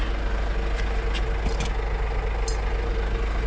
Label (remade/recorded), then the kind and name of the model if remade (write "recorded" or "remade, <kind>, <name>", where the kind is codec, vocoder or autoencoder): recorded